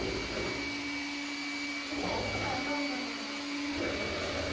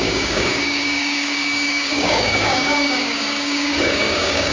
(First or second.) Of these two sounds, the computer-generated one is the second